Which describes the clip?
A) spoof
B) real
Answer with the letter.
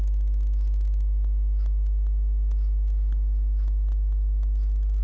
B